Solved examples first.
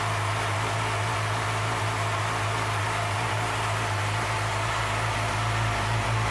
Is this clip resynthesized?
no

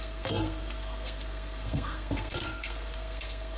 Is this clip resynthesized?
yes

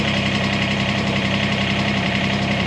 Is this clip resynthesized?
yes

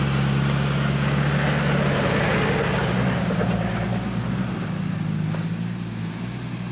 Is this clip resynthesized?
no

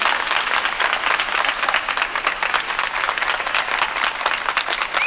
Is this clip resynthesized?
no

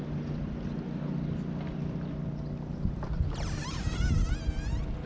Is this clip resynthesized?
no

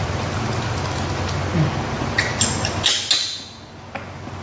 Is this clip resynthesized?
no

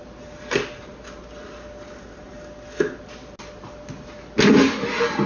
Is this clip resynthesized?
no